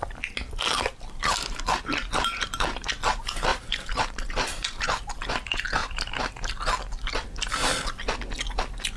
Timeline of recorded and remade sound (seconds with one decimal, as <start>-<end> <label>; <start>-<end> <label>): 0.0-3.5 recorded; 3.5-5.0 remade; 5.0-5.8 recorded; 5.8-6.3 remade; 6.3-9.0 recorded